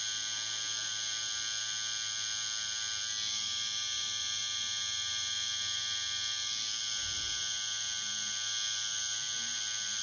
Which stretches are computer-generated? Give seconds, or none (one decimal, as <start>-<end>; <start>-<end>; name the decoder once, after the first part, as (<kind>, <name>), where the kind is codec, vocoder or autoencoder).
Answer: none